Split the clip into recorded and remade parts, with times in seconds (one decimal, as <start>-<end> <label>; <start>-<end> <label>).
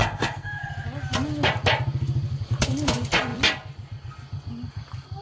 0.0-0.7 remade; 0.7-5.2 recorded